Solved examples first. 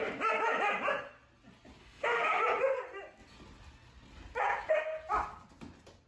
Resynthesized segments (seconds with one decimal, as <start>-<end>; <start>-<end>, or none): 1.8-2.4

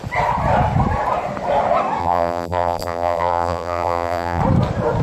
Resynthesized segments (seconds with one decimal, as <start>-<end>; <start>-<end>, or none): 2.0-4.4

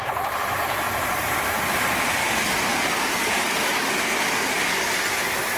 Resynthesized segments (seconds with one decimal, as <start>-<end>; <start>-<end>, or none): 2.2-3.9

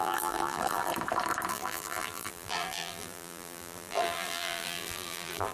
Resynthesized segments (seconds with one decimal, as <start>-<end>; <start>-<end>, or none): 0.0-0.9; 1.5-5.5